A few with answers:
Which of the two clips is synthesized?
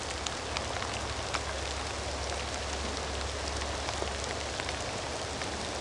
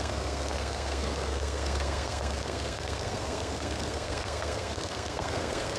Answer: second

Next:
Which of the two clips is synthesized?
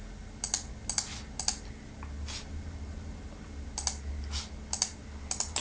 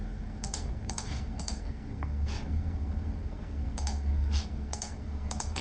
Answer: second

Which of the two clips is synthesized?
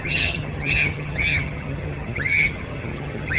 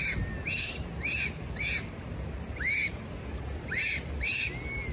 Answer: first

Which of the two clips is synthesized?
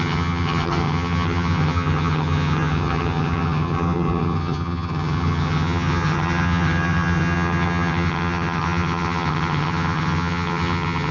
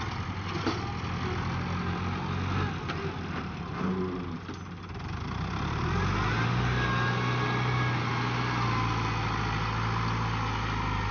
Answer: first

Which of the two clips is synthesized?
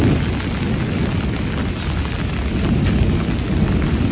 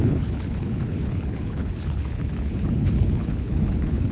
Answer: second